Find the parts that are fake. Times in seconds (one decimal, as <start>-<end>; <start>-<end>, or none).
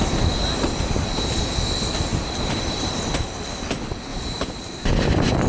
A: 2.1-2.8; 4.1-4.9